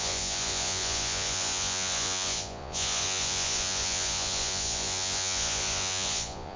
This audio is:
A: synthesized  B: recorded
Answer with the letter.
A